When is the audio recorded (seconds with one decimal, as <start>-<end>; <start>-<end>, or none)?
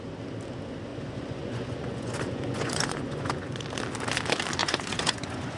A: 0.0-0.9; 3.6-4.6